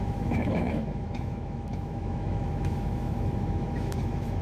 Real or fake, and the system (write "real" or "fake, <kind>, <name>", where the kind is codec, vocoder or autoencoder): fake, autoencoder, DAC-VAE